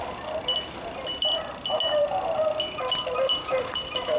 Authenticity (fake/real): real